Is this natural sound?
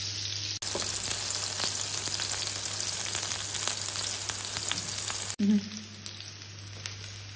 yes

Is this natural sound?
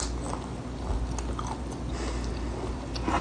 yes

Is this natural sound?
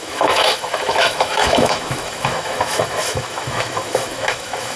no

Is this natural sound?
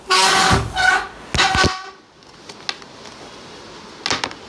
yes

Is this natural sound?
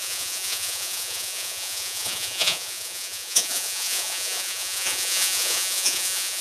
no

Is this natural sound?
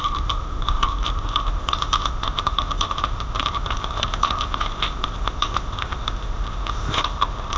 no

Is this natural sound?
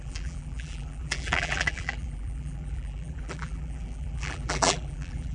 no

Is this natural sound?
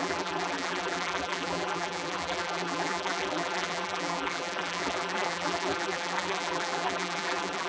no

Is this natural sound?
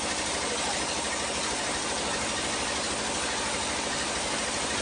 yes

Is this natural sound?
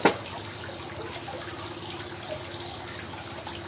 yes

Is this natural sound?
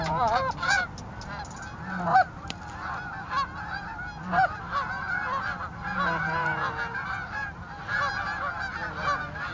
yes